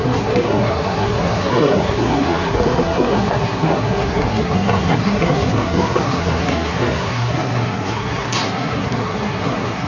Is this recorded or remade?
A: remade